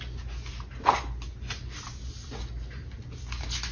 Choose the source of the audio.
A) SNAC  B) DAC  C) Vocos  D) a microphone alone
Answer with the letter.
D